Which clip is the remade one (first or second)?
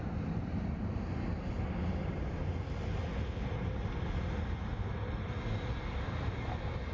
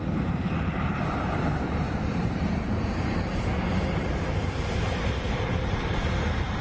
second